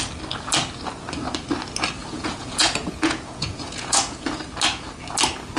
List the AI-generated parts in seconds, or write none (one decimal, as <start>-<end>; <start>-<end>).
2.0-4.4